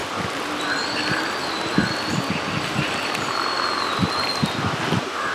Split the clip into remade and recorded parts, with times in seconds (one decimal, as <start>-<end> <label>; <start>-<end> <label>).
0.0-5.3 recorded